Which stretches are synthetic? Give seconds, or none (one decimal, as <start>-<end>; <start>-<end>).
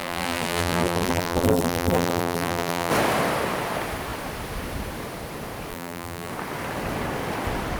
0.0-2.9; 5.7-6.3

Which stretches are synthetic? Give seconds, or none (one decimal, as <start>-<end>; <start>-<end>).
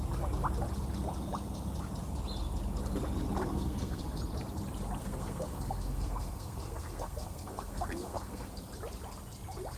3.4-4.0; 5.0-8.6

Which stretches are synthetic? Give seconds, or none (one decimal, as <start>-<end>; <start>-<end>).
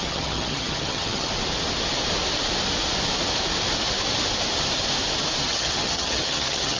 0.0-1.3; 5.4-6.8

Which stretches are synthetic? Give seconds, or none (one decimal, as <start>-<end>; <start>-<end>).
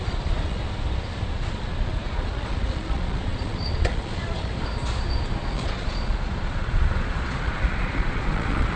0.0-0.6; 1.2-4.5; 5.5-8.8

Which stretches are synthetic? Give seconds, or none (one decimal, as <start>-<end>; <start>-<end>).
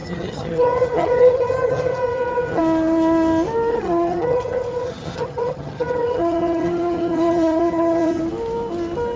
0.0-2.6; 3.7-8.2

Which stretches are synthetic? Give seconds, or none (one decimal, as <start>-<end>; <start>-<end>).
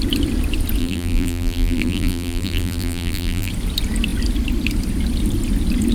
0.8-3.5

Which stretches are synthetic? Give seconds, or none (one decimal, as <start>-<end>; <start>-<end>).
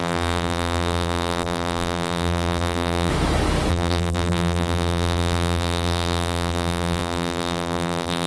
0.0-3.1; 3.7-8.3